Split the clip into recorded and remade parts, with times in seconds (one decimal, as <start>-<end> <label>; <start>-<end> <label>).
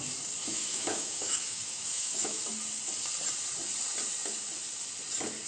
0.0-0.4 recorded; 0.4-2.4 remade; 2.4-5.5 recorded